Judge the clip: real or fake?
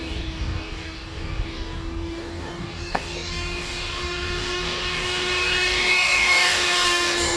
fake